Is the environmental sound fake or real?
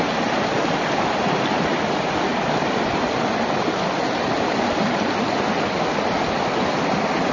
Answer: real